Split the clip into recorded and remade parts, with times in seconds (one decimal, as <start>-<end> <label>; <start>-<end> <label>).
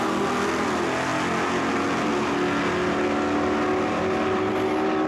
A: 0.0-5.1 recorded